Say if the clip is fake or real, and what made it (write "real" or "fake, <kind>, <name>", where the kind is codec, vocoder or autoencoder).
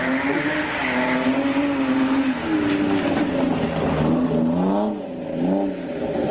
real